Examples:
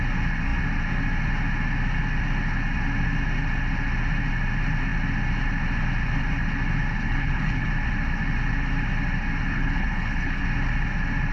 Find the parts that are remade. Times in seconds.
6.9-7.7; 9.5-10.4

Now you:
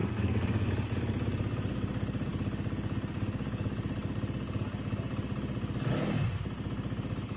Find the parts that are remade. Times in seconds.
0.0-0.7

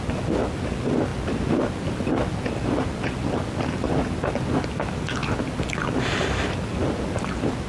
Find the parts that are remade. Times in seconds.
none

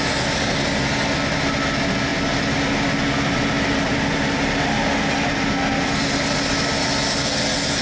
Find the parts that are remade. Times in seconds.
none

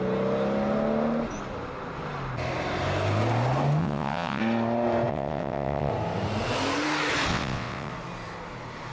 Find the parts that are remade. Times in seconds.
3.8-4.4; 5.1-5.9; 7.3-7.9

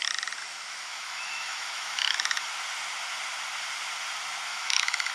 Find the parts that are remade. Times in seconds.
0.4-2.5; 4.5-5.1

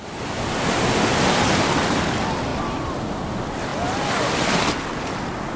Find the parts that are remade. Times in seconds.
none